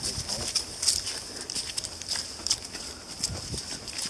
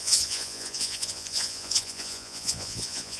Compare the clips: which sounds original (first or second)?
first